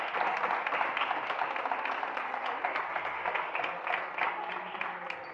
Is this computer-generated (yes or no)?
no